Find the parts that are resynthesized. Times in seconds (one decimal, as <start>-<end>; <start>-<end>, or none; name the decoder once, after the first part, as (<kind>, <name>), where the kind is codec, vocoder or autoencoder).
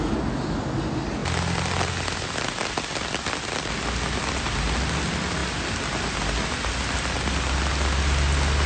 none